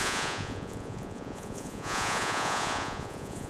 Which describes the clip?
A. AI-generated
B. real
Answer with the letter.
A